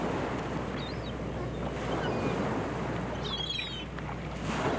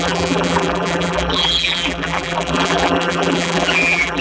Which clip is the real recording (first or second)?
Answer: first